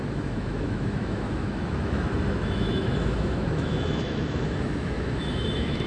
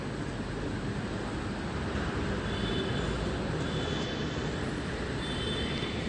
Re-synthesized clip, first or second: first